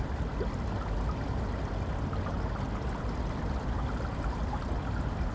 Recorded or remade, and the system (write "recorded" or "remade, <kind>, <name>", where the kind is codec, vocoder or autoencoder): recorded